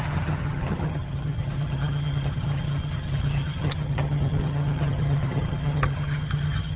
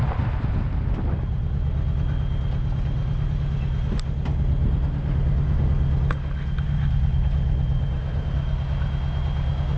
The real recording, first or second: second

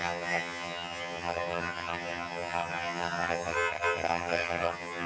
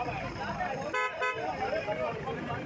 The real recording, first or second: second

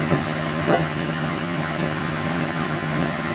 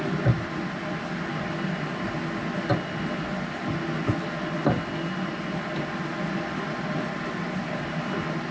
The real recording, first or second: second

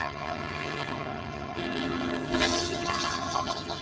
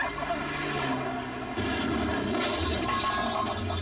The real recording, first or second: second